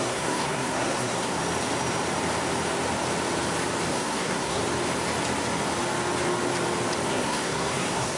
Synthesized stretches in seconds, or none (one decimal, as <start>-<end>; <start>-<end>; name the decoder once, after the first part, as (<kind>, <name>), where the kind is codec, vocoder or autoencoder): 0.0-1.4 (codec, SNAC); 3.9-4.6; 7.1-8.2